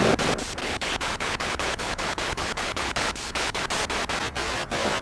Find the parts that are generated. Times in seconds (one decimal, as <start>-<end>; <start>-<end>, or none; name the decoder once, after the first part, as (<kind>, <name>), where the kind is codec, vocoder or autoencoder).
0.6-3.6 (codec, HILCodec)